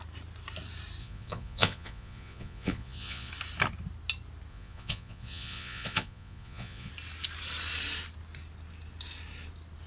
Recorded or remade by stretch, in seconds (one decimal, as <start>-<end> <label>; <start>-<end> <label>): 0.0-1.0 recorded; 1.0-3.3 remade; 3.3-4.5 recorded; 4.5-6.9 remade; 6.9-9.9 recorded